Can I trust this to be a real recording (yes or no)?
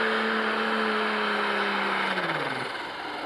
yes